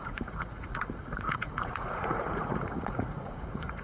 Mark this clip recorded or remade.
remade